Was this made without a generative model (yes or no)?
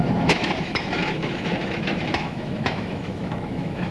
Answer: no